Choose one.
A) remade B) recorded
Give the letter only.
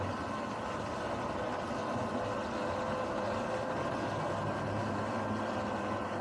B